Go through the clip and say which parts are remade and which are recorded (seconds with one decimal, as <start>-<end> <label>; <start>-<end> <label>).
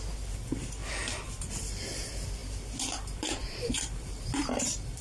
0.0-0.8 remade; 0.8-1.4 recorded; 1.4-5.0 remade